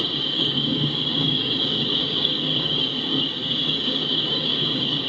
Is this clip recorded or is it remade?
remade